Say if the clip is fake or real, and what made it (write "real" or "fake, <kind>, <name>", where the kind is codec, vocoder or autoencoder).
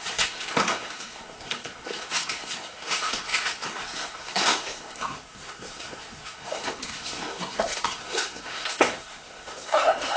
fake, codec, SNAC